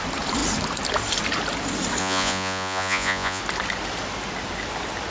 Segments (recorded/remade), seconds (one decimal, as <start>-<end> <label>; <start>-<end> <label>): 0.0-2.0 recorded; 2.0-3.4 remade; 3.4-5.1 recorded